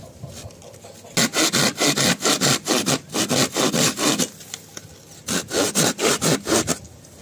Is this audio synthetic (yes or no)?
no